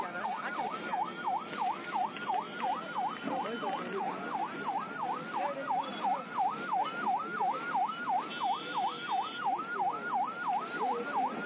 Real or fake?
real